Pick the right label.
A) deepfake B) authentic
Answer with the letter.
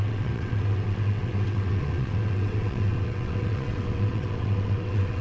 A